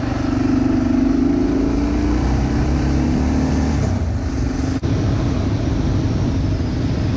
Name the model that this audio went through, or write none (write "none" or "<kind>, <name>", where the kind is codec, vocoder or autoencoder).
none